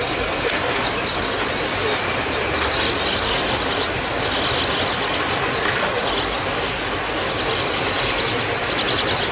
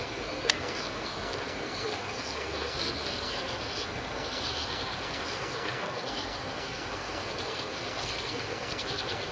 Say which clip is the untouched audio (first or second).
first